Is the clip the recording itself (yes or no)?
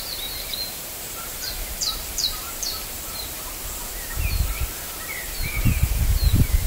no